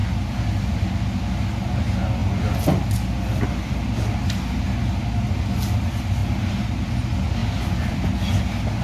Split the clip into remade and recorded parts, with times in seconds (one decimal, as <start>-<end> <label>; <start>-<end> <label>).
0.0-0.6 remade; 0.6-2.2 recorded; 2.2-4.6 remade; 4.6-6.2 recorded; 6.2-6.9 remade; 6.9-7.4 recorded; 7.4-8.1 remade; 8.1-8.8 recorded